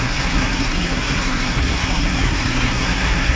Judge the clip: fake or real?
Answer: fake